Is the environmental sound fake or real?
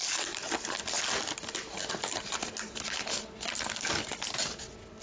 real